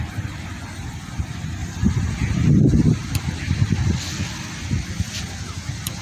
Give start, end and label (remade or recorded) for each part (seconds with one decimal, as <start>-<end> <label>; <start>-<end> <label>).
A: 0.0-1.6 remade; 1.6-2.5 recorded; 2.5-6.0 remade